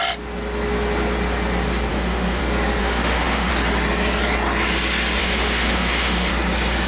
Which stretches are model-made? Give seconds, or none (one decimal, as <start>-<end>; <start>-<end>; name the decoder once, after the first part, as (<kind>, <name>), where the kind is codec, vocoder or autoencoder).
1.9-2.4 (autoencoder, DAC-VAE); 2.8-3.5; 5.2-6.3